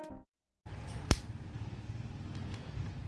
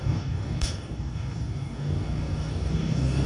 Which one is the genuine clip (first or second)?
first